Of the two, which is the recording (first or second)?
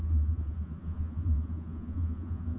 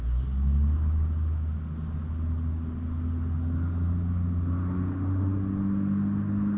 second